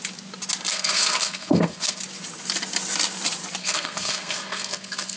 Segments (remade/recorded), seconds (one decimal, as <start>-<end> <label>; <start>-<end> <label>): 0.0-0.7 recorded; 0.7-2.0 remade; 2.0-3.6 recorded; 3.6-5.2 remade